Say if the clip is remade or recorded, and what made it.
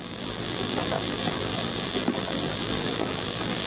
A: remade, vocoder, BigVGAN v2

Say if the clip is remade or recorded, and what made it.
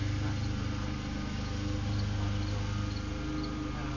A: recorded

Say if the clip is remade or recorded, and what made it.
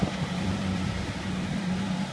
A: remade, vocoder, BigVGAN v2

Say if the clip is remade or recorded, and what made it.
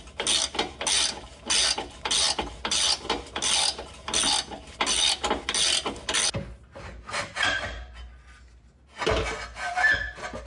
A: recorded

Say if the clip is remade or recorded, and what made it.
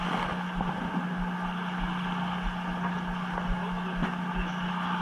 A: recorded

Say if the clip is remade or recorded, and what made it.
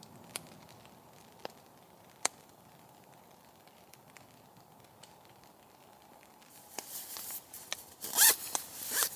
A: remade, vocoder, BigVGAN v2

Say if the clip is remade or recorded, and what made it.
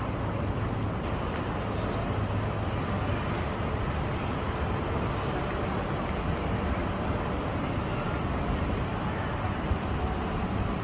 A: recorded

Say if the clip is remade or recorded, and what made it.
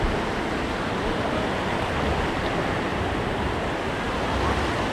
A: recorded